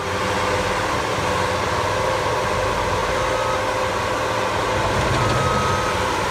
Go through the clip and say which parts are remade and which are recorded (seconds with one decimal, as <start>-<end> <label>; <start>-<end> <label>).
0.0-6.3 recorded